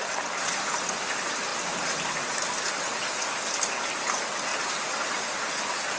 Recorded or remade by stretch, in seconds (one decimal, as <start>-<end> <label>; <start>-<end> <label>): 0.0-6.0 recorded